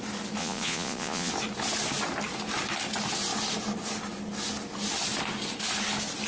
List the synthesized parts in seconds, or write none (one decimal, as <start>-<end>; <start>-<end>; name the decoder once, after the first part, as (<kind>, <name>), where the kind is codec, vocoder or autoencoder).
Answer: 0.4-1.3 (vocoder, Vocos)